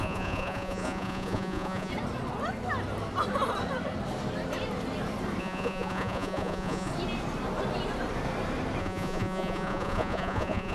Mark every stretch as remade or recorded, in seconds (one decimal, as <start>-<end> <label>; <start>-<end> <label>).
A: 0.0-1.9 remade; 1.9-5.4 recorded; 5.4-6.9 remade; 6.9-8.8 recorded; 8.8-10.7 remade